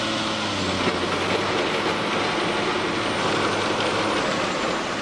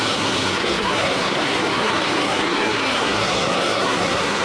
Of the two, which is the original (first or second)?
first